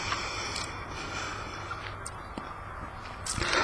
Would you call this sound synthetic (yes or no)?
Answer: no